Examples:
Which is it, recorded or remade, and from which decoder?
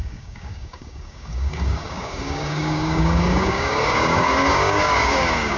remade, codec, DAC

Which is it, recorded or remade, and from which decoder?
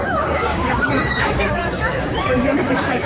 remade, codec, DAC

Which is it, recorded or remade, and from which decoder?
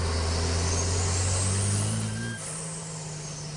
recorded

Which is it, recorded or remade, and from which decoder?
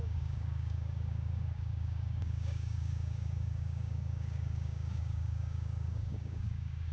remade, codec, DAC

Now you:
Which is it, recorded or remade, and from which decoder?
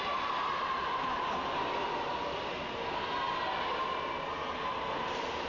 recorded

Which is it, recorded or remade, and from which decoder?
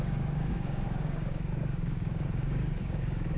remade, codec, DAC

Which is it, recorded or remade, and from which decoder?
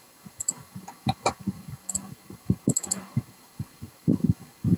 remade, codec, DAC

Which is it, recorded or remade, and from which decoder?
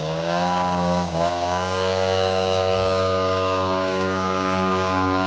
remade, codec, DAC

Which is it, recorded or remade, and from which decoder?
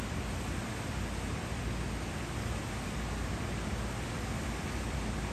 recorded